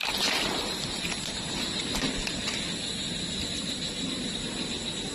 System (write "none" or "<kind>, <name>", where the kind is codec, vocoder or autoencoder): none